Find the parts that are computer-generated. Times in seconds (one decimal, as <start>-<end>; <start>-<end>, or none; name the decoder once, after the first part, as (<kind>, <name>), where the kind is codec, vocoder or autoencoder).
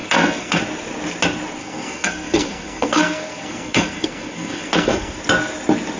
0.0-0.6 (codec, SNAC); 1.6-5.2